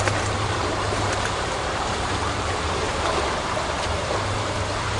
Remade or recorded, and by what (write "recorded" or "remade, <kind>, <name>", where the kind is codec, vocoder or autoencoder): remade, vocoder, BigVGAN v2